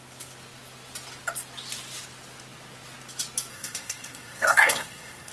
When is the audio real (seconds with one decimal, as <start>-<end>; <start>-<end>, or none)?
0.0-3.5